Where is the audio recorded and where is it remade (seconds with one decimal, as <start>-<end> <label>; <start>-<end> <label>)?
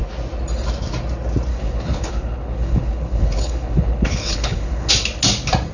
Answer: 0.0-1.5 recorded; 1.5-4.9 remade; 4.9-5.7 recorded